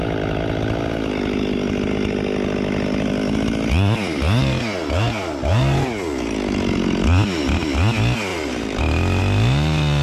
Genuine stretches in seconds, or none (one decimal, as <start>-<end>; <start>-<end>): 0.0-8.3; 8.8-10.0